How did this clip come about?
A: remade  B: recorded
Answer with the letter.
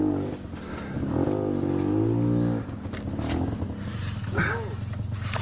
B